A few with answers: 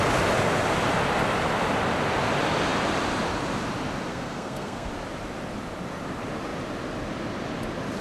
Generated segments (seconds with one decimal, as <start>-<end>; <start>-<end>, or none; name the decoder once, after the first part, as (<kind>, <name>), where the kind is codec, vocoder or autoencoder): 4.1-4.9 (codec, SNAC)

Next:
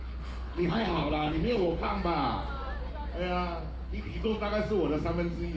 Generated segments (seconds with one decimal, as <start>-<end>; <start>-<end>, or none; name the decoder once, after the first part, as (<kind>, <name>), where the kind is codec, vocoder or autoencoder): 0.0-1.9 (codec, HILCodec); 3.6-4.3

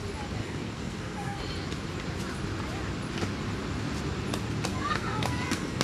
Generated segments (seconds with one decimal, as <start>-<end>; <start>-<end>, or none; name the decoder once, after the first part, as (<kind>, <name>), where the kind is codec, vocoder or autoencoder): 0.4-1.4 (codec, SNAC); 4.7-5.8

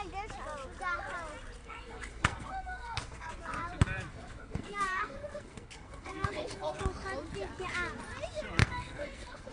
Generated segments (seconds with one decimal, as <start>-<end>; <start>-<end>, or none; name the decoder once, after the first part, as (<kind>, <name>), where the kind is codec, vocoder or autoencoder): 1.6-3.3 (codec, SNAC); 4.1-6.8; 8.6-9.5